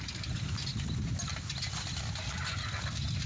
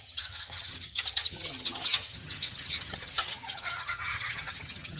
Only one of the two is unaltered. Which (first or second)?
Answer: first